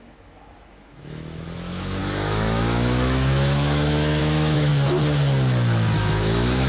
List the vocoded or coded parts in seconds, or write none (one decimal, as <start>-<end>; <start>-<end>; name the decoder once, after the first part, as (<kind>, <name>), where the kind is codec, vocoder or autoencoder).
0.0-4.7 (autoencoder, DAC-VAE); 6.0-6.7